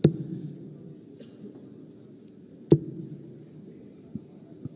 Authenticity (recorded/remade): recorded